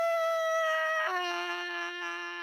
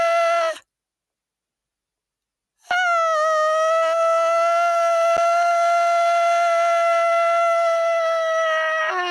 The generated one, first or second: first